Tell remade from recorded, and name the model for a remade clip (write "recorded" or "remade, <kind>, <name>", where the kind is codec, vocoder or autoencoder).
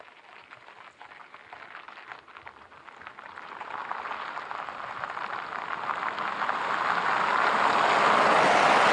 recorded